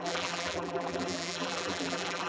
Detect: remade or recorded remade